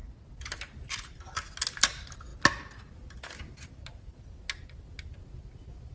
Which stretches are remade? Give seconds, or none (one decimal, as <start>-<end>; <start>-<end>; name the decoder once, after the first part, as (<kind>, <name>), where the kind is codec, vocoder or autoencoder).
none